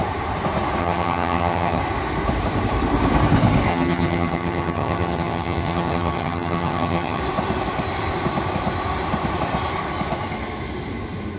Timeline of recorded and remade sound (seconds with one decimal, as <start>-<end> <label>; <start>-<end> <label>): 0.0-0.8 recorded; 0.8-1.8 remade; 1.8-3.7 recorded; 3.7-7.2 remade; 7.2-11.4 recorded